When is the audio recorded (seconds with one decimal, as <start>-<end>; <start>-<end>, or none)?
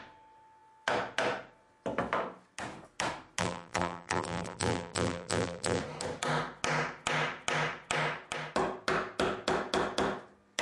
0.0-3.4; 5.8-10.6